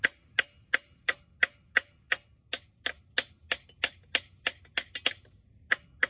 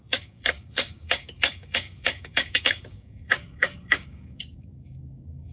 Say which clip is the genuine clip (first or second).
first